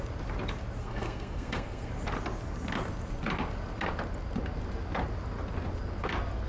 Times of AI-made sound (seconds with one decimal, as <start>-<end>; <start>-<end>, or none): 0.8-1.9